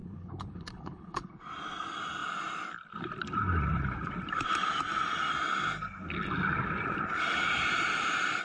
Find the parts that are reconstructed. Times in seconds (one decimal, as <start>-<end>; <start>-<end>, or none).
0.0-1.3